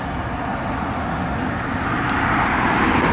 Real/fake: real